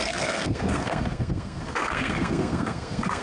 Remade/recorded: remade